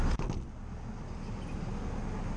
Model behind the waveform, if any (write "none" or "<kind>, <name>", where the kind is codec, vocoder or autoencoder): none